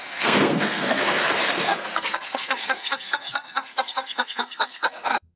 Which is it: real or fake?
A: fake